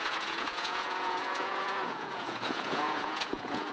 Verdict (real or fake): fake